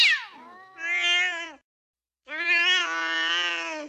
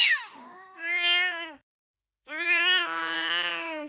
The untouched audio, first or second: first